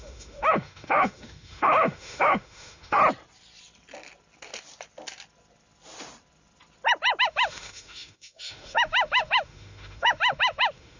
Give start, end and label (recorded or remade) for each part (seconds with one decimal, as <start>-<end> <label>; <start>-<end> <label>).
0.0-3.0 remade; 3.0-7.2 recorded; 7.2-11.0 remade